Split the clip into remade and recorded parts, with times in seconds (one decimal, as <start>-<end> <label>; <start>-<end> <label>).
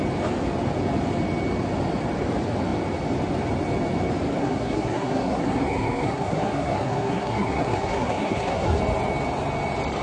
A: 0.0-4.4 recorded; 4.4-8.8 remade; 8.8-10.0 recorded